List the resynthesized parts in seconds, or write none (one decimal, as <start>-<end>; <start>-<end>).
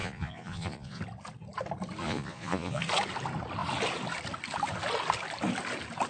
0.0-1.0; 2.0-2.8